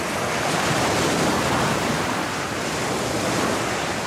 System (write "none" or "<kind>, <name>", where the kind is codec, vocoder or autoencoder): none